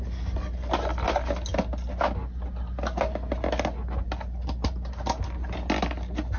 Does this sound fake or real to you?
real